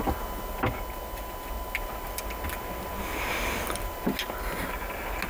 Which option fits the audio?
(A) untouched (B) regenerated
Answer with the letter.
A